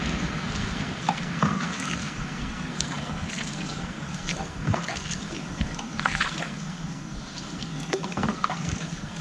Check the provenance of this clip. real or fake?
fake